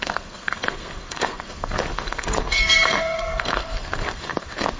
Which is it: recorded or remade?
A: remade